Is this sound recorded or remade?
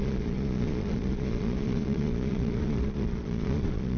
remade